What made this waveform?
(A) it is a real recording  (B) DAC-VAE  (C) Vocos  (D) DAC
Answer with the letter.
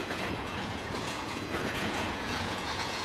C